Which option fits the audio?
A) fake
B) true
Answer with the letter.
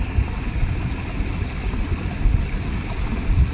B